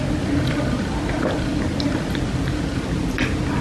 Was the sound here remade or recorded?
recorded